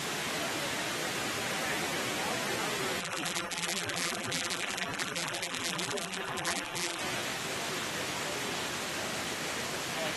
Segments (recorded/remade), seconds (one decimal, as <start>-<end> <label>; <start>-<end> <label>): 0.0-3.0 recorded; 3.0-7.0 remade; 7.0-10.2 recorded